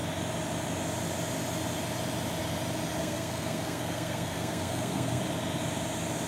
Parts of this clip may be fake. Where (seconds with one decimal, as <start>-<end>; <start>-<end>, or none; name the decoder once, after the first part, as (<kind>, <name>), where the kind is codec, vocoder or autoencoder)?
3.0-5.2 (codec, SNAC)